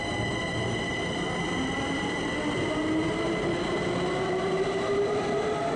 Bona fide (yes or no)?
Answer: yes